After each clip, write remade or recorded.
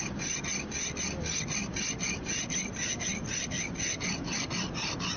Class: recorded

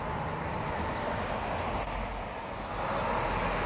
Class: recorded